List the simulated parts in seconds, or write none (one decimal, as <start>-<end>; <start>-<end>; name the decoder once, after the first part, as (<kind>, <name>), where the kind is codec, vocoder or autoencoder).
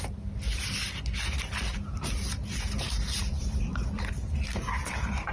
1.7-5.3 (vocoder, BigVGAN v2)